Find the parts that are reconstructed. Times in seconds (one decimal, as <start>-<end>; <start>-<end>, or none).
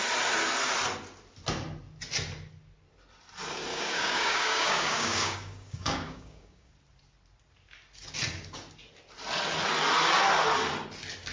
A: 3.7-6.7